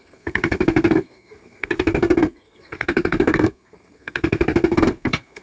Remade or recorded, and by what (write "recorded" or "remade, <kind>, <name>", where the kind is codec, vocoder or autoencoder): remade, codec, SNAC